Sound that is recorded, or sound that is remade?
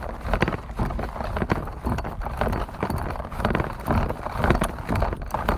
recorded